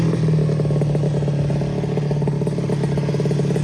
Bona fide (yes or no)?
yes